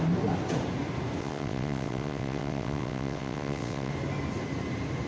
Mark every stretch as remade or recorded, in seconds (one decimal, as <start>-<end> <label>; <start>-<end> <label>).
0.0-1.2 recorded; 1.2-3.9 remade; 3.9-5.1 recorded